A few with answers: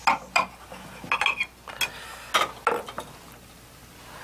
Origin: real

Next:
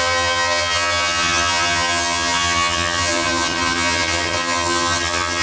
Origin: fake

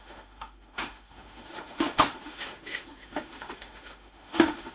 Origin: fake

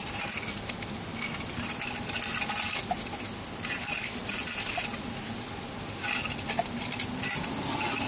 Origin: real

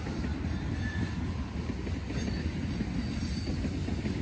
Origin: real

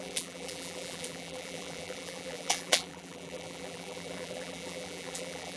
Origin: fake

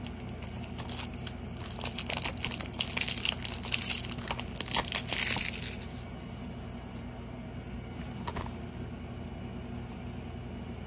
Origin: real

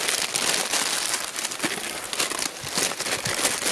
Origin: real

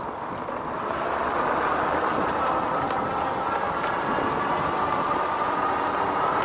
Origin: real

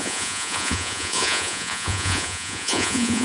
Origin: fake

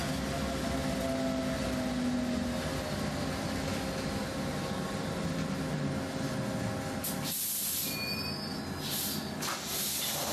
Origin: real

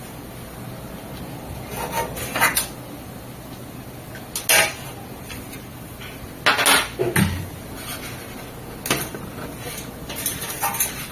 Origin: real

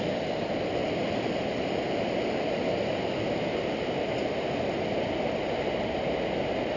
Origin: real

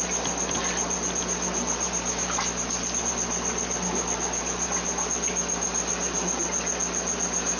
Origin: real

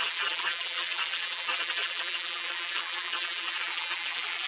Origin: fake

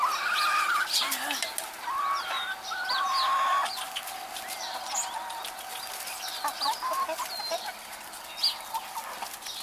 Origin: real